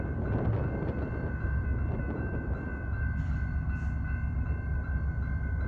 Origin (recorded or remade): recorded